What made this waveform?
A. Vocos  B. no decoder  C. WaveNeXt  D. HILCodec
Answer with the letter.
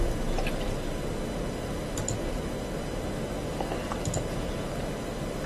B